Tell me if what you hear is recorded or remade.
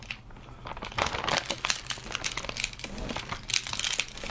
recorded